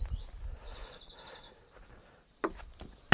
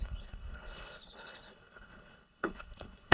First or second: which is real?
first